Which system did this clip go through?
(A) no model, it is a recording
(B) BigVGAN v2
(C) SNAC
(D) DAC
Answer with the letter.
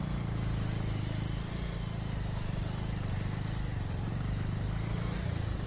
A